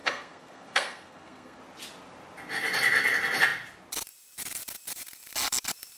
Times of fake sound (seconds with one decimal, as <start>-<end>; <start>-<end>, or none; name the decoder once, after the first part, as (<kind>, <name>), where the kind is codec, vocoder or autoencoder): 0.0-1.6 (codec, SNAC)